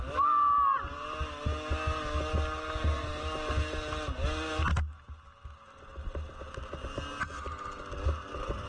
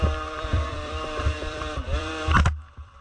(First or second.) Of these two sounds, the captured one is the first